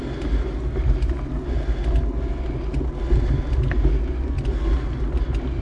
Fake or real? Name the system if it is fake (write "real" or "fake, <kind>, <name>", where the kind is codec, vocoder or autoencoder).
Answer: real